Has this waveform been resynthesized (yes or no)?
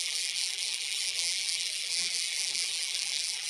yes